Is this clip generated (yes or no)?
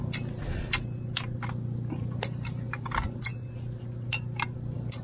no